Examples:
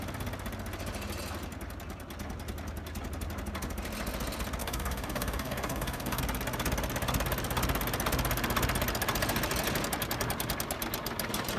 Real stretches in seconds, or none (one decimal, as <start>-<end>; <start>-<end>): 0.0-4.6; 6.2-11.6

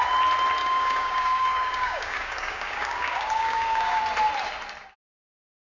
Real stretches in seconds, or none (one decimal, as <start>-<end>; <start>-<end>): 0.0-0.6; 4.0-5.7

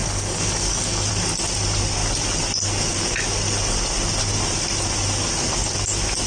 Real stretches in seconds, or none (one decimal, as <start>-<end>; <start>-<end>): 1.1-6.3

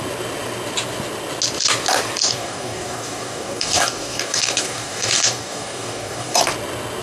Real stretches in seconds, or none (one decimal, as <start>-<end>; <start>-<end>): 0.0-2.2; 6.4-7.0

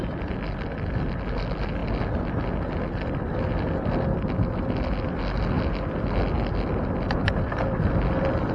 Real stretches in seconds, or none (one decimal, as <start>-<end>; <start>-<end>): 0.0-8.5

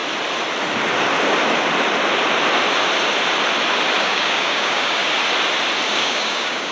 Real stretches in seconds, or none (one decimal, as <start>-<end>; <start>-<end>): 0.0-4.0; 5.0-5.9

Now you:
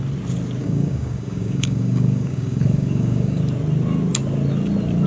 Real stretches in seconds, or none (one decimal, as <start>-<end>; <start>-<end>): 0.0-0.6; 3.4-5.1

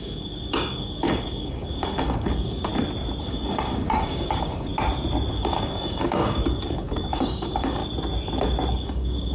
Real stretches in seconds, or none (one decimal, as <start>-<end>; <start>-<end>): 2.7-3.2; 4.7-5.3; 7.8-8.7